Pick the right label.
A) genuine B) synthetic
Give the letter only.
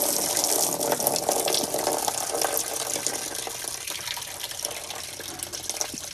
A